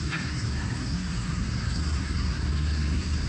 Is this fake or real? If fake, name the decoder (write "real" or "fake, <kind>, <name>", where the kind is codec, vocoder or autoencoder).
fake, codec, SNAC